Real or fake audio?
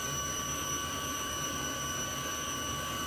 fake